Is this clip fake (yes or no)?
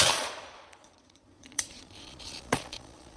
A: yes